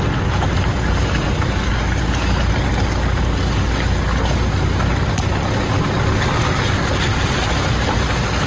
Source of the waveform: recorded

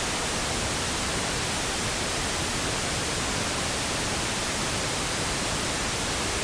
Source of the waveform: remade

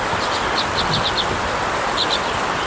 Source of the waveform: recorded